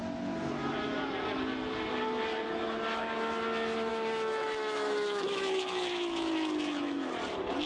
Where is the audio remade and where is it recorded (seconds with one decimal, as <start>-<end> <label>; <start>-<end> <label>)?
0.0-3.9 recorded; 3.9-7.1 remade; 7.1-7.7 recorded